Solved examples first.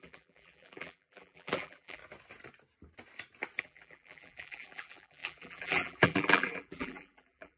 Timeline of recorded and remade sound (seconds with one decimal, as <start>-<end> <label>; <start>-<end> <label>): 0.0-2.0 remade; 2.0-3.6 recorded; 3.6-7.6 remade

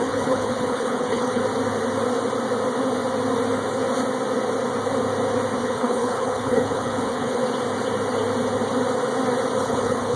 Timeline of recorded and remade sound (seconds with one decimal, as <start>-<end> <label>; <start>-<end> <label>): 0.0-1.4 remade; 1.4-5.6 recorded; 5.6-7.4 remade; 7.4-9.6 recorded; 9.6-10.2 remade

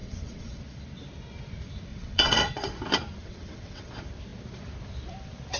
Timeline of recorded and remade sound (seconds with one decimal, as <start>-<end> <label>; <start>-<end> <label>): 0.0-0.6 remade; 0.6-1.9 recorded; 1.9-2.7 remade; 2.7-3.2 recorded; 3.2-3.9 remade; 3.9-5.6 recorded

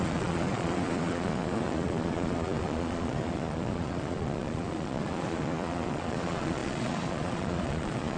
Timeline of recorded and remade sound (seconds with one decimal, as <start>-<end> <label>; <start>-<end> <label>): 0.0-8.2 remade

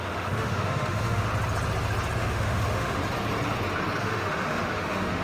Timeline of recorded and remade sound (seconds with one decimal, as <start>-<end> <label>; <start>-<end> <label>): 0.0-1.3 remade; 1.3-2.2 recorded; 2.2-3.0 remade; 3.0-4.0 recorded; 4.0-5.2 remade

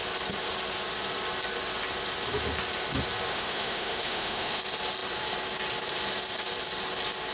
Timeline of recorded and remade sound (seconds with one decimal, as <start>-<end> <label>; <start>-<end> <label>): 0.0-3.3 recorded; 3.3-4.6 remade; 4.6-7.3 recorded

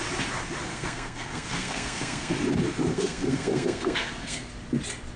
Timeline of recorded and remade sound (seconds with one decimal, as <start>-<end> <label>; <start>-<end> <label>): 0.0-0.7 recorded; 0.7-2.3 remade; 2.3-2.9 recorded; 2.9-4.5 remade; 4.5-5.2 recorded

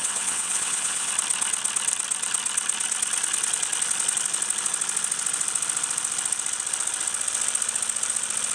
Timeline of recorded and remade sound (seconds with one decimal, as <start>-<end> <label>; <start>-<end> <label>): 0.0-1.1 remade; 1.1-8.5 recorded